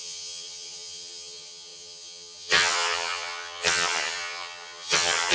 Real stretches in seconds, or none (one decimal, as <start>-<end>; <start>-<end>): none